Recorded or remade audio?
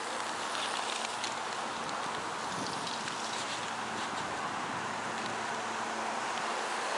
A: recorded